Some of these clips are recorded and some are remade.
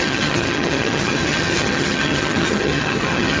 remade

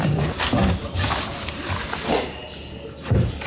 recorded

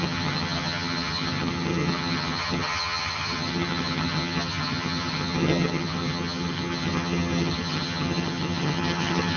remade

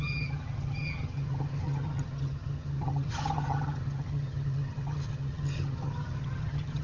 remade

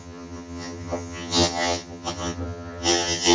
remade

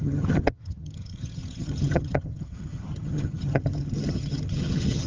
remade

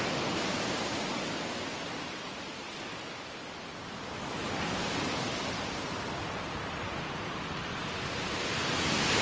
recorded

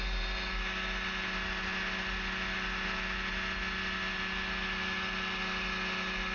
recorded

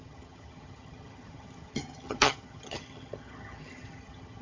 remade